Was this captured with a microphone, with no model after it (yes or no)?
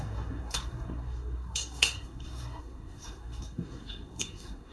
no